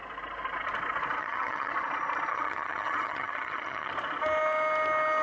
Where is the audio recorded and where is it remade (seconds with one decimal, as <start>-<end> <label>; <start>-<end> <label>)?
0.0-1.2 recorded; 1.2-1.7 remade; 1.7-2.3 recorded; 2.3-3.9 remade; 3.9-5.2 recorded